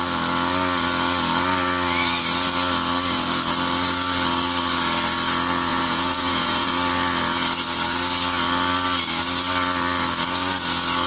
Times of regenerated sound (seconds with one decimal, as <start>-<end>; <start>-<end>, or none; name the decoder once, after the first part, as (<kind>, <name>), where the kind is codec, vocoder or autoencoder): 5.7-6.7 (vocoder, Vocos)